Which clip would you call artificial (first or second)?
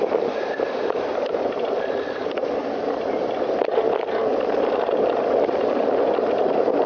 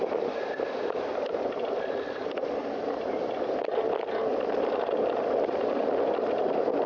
first